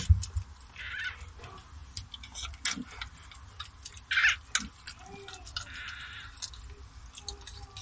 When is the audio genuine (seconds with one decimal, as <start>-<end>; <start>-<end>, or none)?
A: 0.0-7.8